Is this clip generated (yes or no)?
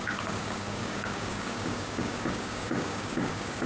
yes